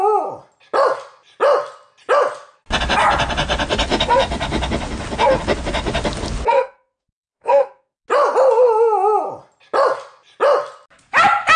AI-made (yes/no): no